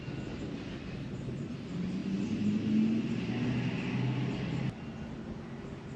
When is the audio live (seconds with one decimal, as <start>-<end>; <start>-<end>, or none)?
0.0-6.0